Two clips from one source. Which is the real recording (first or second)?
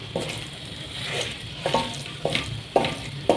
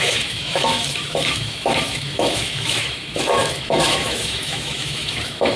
first